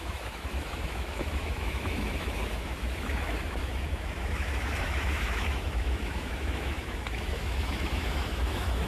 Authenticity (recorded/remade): remade